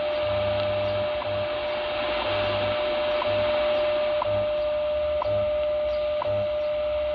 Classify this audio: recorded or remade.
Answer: recorded